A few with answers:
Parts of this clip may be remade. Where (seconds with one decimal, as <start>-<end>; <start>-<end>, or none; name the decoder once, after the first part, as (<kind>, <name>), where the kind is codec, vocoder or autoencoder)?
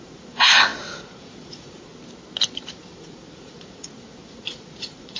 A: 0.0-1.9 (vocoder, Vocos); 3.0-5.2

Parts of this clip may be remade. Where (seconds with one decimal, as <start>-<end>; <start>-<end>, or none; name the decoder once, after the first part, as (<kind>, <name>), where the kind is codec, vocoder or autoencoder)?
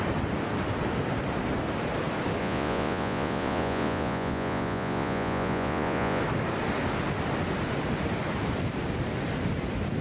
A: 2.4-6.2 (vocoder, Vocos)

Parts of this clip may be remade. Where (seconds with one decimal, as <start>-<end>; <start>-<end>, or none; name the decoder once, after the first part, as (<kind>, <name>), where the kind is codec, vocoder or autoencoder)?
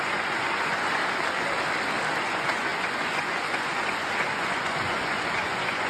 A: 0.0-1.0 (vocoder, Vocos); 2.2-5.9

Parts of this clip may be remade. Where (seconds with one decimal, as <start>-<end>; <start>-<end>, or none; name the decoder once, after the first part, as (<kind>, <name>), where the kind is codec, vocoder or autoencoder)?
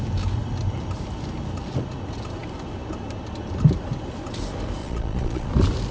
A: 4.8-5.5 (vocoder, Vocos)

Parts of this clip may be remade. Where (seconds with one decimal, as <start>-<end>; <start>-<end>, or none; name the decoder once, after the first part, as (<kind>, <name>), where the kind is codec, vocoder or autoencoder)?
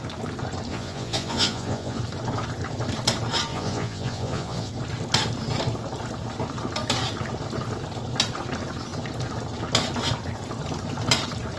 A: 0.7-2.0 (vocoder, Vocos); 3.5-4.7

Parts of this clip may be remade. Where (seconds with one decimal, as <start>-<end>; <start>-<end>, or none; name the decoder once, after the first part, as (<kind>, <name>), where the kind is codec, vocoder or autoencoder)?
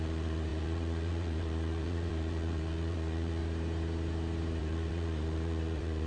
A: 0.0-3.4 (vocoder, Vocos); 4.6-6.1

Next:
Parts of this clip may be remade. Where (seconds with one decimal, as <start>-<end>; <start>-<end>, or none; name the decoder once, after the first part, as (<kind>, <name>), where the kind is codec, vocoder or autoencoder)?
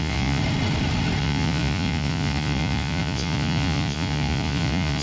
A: 0.0-0.4 (vocoder, Vocos); 1.2-5.0